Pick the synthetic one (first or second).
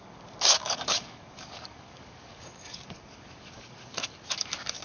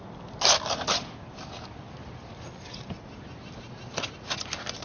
first